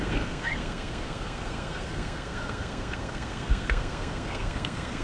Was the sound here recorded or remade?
remade